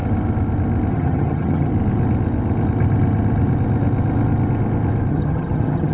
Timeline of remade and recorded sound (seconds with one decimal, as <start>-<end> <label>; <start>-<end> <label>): 0.0-0.9 recorded; 0.9-1.7 remade; 1.7-5.1 recorded; 5.1-5.9 remade